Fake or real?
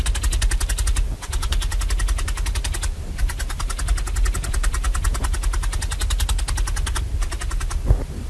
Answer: real